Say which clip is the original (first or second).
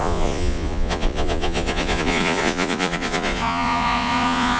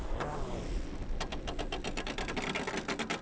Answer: second